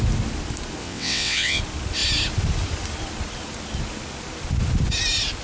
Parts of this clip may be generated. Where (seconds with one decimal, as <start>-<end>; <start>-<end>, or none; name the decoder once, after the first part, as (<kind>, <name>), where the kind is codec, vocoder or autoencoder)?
0.8-1.6 (vocoder, WaveNeXt)